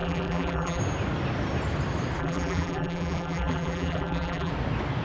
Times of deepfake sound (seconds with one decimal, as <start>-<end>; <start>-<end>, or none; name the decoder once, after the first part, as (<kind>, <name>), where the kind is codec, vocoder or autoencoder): 0.0-0.8 (vocoder, BigVGAN v2); 2.2-4.5